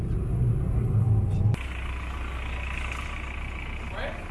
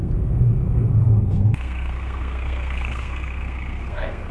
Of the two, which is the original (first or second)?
first